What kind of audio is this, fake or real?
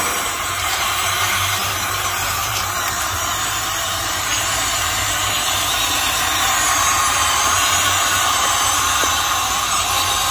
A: fake